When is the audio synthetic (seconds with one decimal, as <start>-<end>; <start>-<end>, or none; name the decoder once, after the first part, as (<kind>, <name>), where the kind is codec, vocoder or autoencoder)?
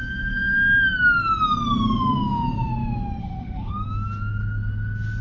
3.2-3.7 (autoencoder, DAC-VAE)